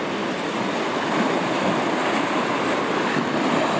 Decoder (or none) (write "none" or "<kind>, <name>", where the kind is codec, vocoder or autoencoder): none